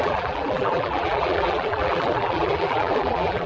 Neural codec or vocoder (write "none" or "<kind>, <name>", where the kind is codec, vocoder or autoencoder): vocoder, BigVGAN v2